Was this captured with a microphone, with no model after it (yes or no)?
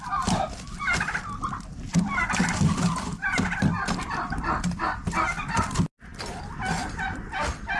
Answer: yes